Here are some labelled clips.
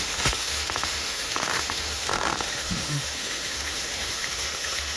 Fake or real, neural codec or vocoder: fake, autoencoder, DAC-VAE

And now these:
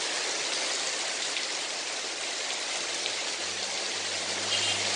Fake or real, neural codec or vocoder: real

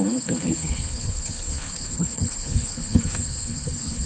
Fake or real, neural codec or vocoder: fake, codec, HILCodec